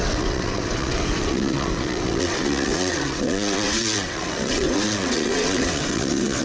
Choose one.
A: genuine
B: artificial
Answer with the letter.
B